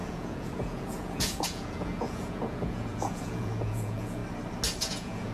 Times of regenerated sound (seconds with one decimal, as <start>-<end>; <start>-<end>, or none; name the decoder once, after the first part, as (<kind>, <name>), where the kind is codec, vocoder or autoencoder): 0.0-4.2 (vocoder, Vocos); 4.8-5.3